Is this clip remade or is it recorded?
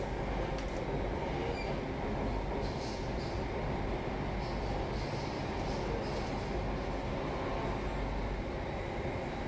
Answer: recorded